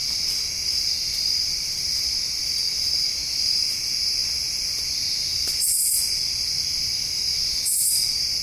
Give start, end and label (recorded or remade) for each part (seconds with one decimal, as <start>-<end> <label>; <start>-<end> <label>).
0.0-8.4 recorded